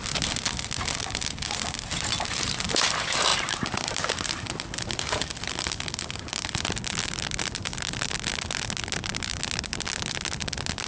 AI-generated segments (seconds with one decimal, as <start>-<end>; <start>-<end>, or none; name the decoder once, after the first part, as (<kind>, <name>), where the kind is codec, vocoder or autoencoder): 3.3-8.1 (vocoder, BigVGAN v2)